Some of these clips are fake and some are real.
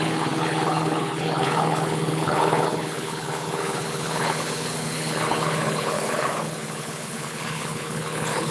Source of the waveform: fake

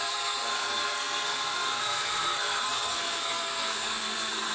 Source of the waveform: fake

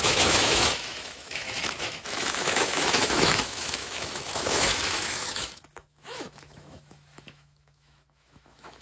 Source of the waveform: fake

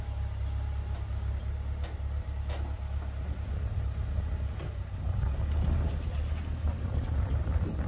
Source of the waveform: real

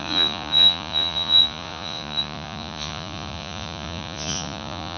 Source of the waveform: fake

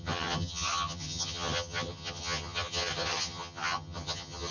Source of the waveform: fake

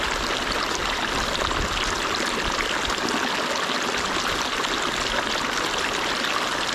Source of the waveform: real